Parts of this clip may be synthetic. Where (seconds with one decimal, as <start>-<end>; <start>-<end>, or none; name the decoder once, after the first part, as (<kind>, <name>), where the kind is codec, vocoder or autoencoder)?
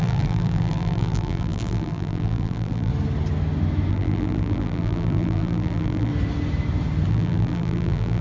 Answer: 0.0-2.9 (vocoder, BigVGAN v2); 3.9-6.1; 7.1-8.2